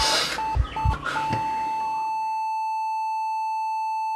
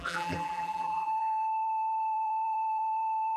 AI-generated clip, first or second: second